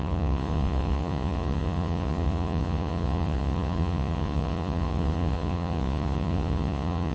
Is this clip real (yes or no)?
no